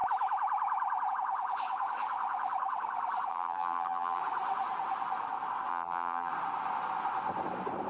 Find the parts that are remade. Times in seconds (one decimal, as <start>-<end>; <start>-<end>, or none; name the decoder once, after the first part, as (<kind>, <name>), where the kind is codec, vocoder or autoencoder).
3.3-4.2 (vocoder, BigVGAN v2); 5.7-6.3